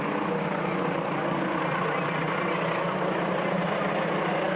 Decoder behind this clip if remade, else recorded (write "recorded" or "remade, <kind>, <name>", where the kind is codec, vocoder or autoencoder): recorded